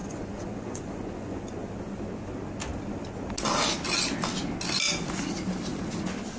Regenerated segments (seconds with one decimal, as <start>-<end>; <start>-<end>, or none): 0.0-1.7

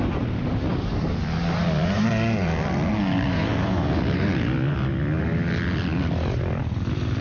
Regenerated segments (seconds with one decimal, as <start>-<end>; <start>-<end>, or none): none

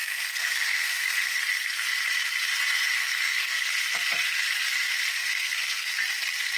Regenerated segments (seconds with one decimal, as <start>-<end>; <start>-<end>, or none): 0.0-1.4; 3.0-3.7; 5.1-5.9

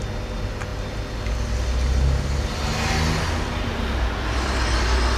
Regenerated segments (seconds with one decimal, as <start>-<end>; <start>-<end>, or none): none

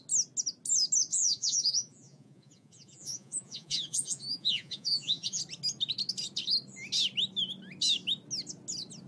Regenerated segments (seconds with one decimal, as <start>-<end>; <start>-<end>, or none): 1.1-5.4

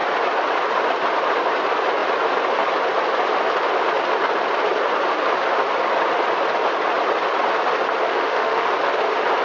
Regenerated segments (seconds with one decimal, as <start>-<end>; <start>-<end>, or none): 8.1-8.7